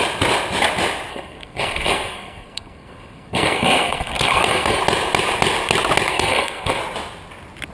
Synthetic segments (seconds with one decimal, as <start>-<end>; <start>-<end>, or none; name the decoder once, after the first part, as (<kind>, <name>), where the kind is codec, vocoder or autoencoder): 1.1-4.8 (codec, SNAC); 6.1-6.8